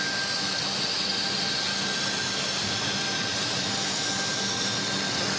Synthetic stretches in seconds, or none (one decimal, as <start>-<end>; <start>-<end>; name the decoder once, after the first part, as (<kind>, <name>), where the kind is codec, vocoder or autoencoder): none